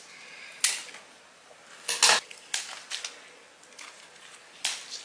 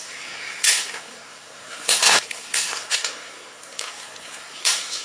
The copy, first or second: second